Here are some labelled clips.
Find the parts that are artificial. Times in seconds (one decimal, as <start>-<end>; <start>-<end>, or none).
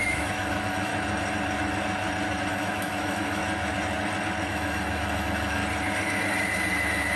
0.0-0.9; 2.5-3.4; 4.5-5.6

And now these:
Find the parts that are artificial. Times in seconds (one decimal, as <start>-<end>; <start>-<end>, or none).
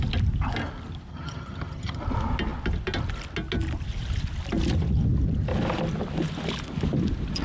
1.1-2.0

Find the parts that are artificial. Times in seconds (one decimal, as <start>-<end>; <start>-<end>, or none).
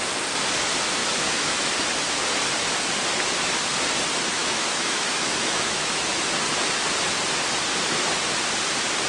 1.0-1.7; 4.4-6.2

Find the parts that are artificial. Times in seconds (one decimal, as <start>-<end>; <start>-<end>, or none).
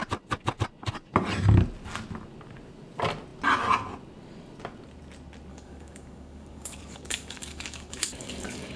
5.5-8.8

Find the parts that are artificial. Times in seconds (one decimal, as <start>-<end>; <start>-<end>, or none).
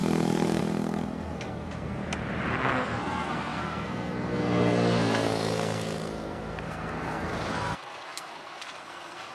0.0-2.0; 2.6-9.3